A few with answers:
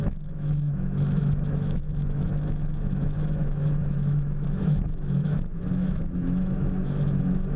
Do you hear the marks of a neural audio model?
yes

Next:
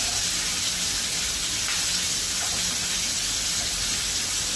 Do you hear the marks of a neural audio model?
no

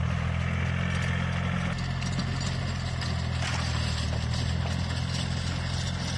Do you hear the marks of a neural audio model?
no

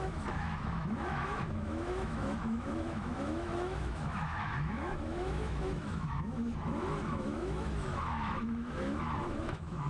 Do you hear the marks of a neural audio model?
yes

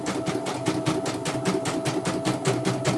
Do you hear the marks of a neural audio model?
no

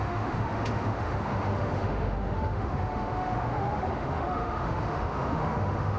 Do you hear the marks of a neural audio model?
yes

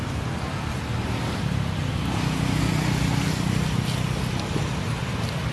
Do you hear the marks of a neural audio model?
no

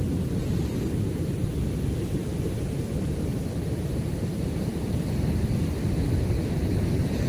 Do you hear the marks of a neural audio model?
no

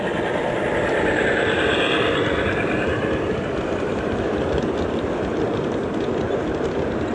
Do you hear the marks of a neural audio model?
no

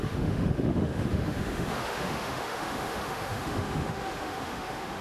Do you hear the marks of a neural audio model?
yes